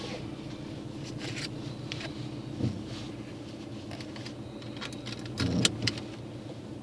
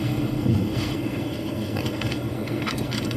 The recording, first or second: first